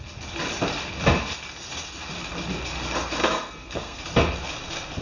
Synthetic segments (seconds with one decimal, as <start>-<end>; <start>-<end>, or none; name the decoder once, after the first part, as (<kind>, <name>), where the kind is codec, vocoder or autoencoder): 3.2-4.0 (codec, SNAC)